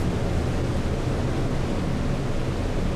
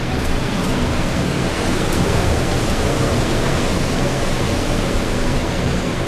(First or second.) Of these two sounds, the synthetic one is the second